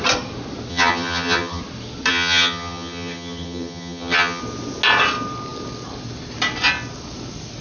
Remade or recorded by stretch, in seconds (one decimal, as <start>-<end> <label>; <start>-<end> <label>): 0.0-0.7 recorded; 0.7-1.6 remade; 1.6-2.1 recorded; 2.1-4.4 remade; 4.4-7.6 recorded

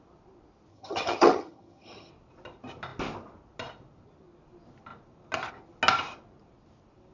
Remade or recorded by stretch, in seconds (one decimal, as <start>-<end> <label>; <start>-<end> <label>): 0.0-0.7 recorded; 0.7-2.1 remade; 2.1-7.1 recorded

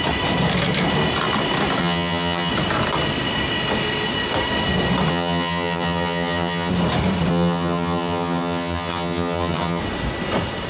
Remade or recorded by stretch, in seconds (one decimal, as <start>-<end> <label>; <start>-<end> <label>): 0.0-1.8 recorded; 1.8-2.5 remade; 2.5-5.1 recorded; 5.1-6.7 remade; 6.7-7.3 recorded; 7.3-9.8 remade; 9.8-10.7 recorded

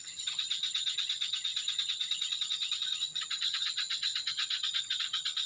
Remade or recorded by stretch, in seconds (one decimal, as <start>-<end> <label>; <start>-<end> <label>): 0.0-5.5 remade

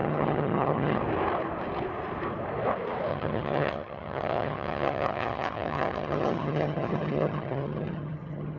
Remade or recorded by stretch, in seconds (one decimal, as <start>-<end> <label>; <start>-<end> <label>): 0.0-1.0 remade; 1.0-3.1 recorded; 3.1-8.6 remade

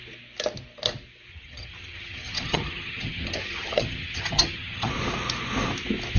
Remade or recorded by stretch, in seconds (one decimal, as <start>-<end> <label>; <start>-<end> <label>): 0.0-1.3 recorded; 1.3-4.9 remade; 4.9-6.2 recorded

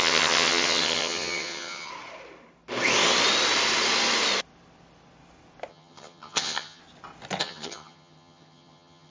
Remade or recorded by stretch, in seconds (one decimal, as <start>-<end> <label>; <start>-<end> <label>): 0.0-1.9 remade; 1.9-5.7 recorded; 5.7-6.8 remade; 6.8-7.4 recorded; 7.4-9.1 remade

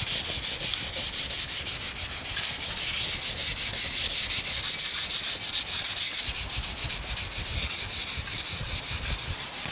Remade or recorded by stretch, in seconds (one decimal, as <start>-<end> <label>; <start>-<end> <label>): 0.0-9.7 recorded